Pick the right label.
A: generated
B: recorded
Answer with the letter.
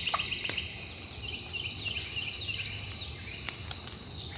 B